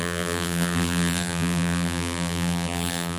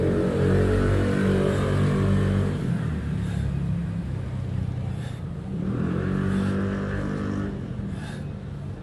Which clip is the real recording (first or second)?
second